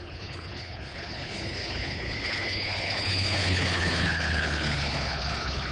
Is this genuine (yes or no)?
no